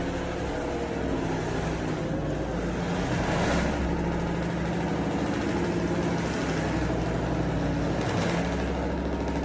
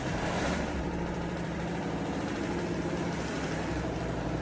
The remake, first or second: second